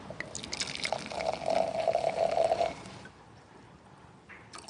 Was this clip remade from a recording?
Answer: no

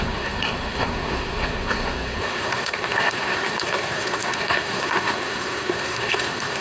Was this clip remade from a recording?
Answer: yes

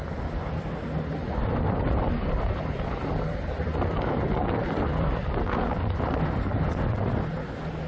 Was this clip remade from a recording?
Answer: no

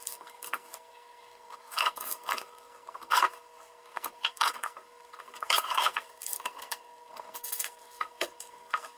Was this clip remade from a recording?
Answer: yes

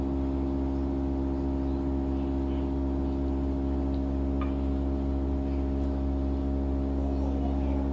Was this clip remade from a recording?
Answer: no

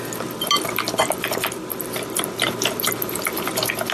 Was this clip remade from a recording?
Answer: no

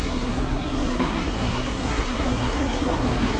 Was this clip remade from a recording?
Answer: yes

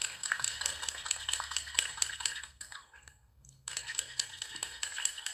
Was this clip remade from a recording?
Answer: yes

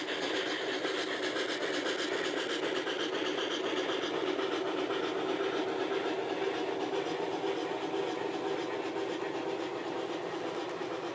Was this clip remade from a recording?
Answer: no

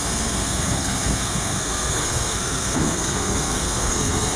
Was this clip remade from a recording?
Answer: yes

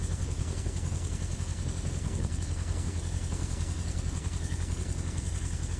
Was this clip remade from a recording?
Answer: yes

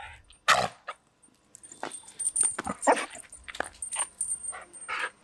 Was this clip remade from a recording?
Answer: no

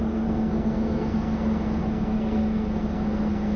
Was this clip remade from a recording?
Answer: yes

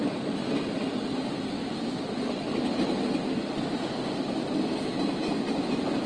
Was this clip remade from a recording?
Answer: no